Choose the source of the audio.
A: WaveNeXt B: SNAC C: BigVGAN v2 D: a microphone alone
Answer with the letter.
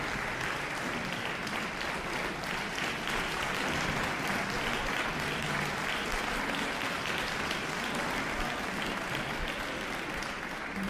D